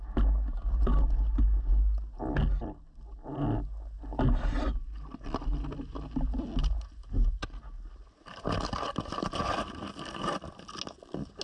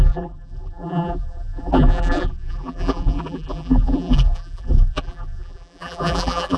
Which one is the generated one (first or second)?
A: second